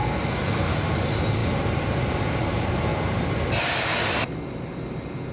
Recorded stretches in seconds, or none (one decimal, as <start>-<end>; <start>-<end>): 0.0-5.3